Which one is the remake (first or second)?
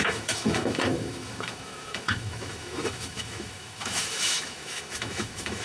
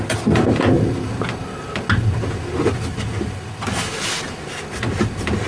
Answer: first